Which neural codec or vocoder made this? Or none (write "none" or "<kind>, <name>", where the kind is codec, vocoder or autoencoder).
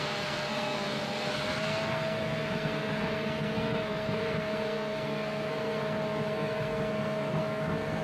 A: codec, SNAC